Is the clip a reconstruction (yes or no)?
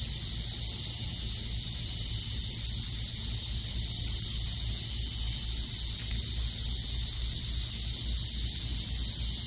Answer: no